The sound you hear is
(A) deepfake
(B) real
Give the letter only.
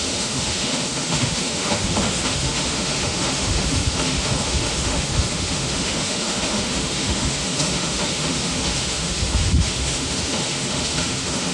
A